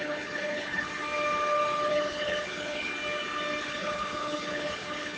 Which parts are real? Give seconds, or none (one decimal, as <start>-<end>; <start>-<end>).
0.9-1.9; 2.9-3.6